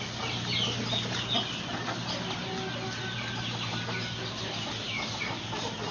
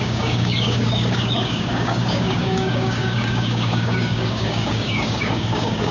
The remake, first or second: second